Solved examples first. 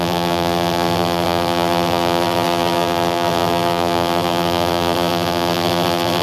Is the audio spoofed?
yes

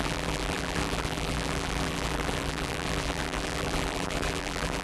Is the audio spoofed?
yes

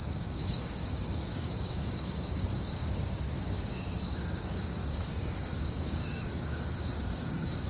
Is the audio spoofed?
yes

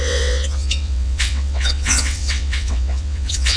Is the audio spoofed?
yes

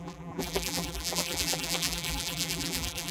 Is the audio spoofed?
yes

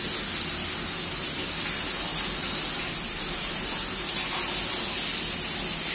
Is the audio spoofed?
no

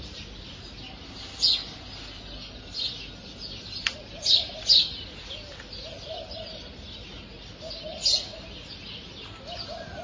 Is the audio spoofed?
no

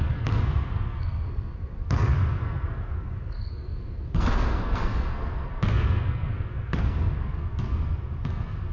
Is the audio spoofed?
yes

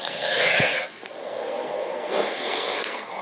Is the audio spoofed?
yes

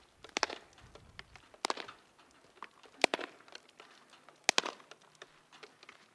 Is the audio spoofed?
no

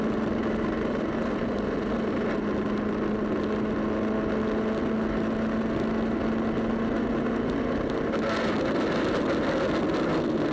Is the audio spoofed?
no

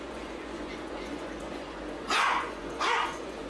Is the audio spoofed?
yes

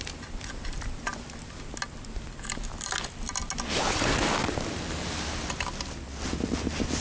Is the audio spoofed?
no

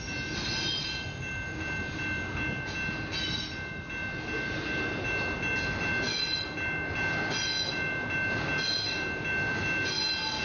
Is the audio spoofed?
no